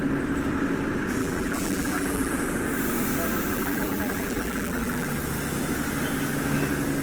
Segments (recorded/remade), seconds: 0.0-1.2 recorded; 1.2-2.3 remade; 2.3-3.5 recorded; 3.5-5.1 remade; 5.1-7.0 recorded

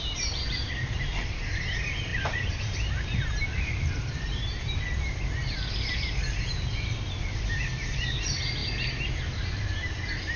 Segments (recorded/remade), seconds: 0.0-10.4 remade

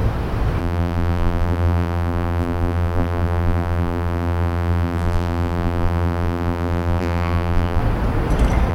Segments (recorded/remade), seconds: 0.0-0.6 recorded; 0.6-7.8 remade; 7.8-8.7 recorded